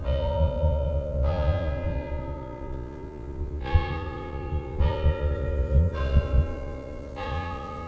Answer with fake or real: fake